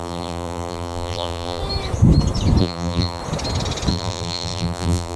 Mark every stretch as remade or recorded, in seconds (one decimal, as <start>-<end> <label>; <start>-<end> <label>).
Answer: 0.0-1.6 remade; 1.6-2.6 recorded; 2.6-3.2 remade; 3.2-3.9 recorded; 3.9-5.2 remade